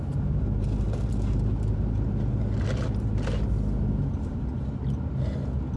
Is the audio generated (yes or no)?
no